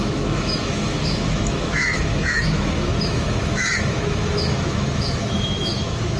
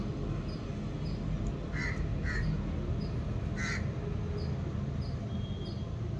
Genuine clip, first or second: second